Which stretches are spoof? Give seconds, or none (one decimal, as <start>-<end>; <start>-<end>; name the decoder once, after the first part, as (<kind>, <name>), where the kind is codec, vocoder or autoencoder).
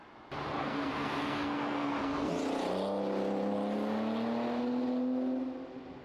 0.5-2.3 (codec, SNAC)